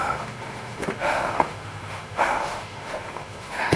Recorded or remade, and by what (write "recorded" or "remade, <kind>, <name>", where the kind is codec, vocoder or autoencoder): remade, autoencoder, DAC-VAE